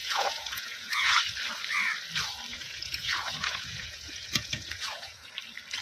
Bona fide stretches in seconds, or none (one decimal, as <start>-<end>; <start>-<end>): 1.2-2.5; 5.3-5.8